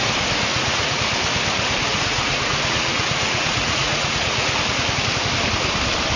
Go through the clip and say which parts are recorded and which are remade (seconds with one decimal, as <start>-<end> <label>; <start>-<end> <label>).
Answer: 0.0-0.5 recorded; 0.5-1.0 remade; 1.0-1.9 recorded; 1.9-4.6 remade; 4.6-6.2 recorded